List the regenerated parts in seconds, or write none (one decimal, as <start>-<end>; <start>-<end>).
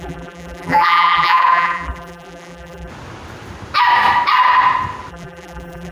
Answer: 0.0-2.9; 5.1-5.9